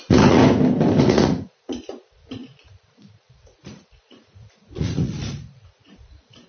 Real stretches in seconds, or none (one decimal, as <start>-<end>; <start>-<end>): 0.4-1.0